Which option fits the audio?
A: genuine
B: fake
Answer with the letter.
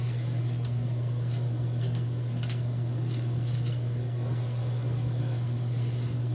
B